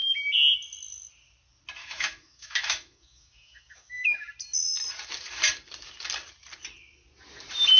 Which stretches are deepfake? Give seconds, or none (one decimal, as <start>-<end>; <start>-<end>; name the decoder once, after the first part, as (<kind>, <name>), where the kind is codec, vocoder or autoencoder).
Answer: 1.8-4.3 (autoencoder, DAC-VAE)